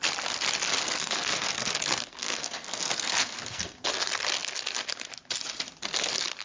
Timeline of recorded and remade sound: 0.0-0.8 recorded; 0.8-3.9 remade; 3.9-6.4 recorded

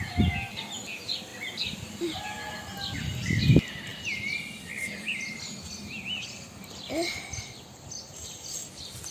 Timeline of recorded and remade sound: 0.0-9.1 recorded